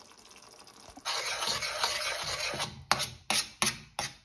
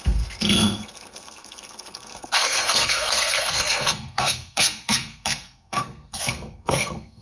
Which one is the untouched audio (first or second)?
first